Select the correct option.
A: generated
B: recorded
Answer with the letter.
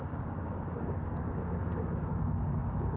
A